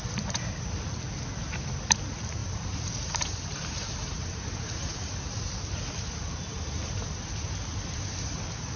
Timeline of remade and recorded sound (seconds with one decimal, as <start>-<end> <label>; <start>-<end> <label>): 0.0-2.4 recorded; 2.4-5.5 remade; 5.5-8.8 recorded